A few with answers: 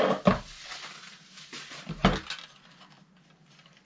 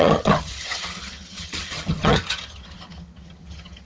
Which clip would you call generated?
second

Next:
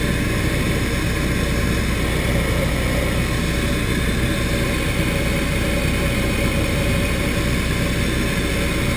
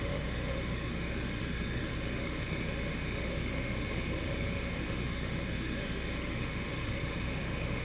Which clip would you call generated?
second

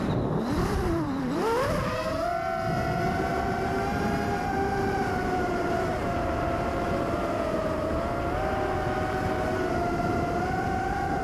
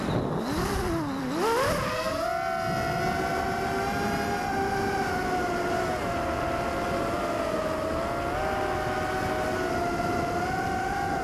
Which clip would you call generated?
first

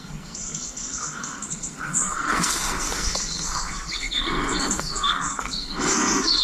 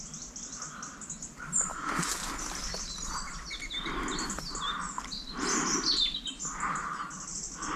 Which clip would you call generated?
first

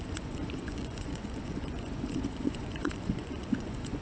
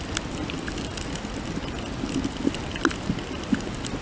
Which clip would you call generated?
first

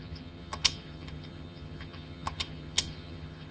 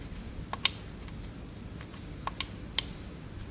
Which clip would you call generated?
first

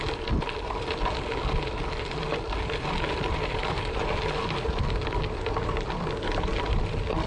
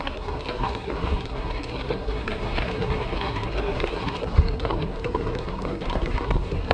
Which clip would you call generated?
second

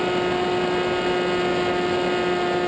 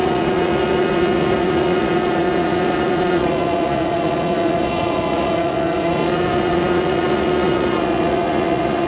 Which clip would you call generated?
second